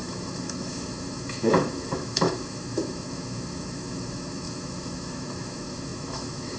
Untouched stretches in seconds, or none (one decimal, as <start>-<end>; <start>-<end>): none